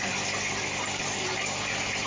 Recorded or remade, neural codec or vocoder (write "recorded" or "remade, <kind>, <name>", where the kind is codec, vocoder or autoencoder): recorded